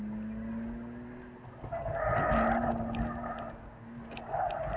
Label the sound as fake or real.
real